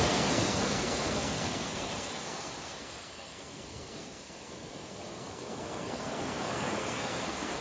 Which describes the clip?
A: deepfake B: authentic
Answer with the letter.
A